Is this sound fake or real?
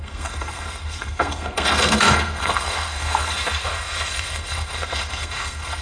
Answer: fake